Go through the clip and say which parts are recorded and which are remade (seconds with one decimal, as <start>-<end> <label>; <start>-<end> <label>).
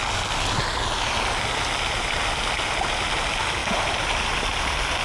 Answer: 0.0-3.6 recorded; 3.6-4.2 remade; 4.2-5.0 recorded